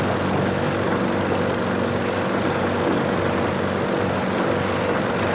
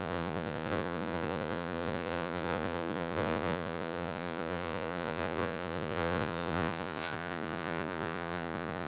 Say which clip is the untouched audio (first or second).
first